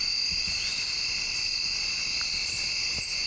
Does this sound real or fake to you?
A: real